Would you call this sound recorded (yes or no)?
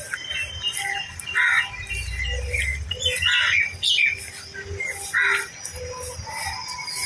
yes